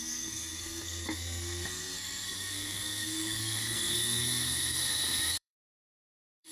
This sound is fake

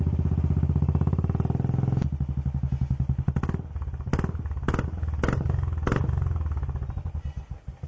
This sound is real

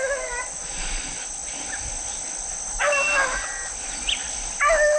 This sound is real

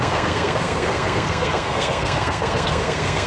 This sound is fake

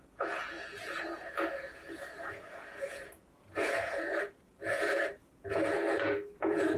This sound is fake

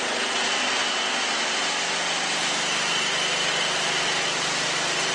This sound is real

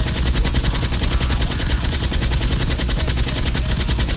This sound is fake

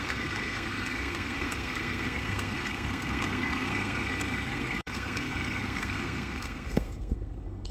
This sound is fake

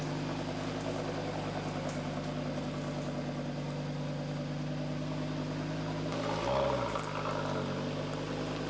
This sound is real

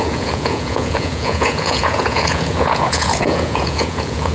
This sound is fake